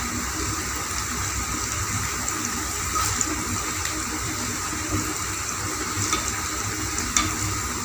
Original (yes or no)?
no